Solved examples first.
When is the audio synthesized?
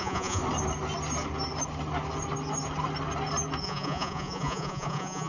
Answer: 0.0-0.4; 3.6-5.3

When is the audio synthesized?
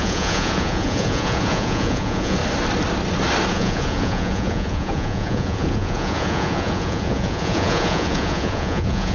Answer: 0.0-2.4; 3.5-9.1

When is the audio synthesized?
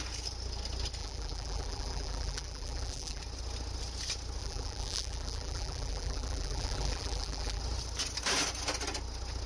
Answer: 1.0-3.2; 4.4-7.6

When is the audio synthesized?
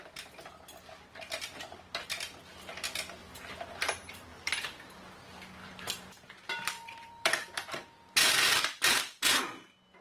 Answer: 4.3-4.8; 5.6-9.4